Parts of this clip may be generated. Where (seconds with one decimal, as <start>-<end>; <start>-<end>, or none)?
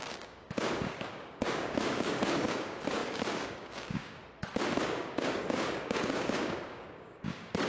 0.0-4.2; 4.8-7.7